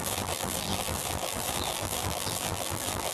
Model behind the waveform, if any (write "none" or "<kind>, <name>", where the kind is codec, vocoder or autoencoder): vocoder, BigVGAN v2